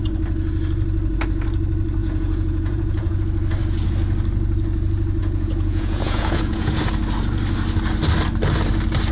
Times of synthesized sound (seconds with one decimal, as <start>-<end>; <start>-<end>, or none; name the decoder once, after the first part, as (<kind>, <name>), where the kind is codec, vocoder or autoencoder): 2.0-3.2 (vocoder, Vocos); 5.2-6.8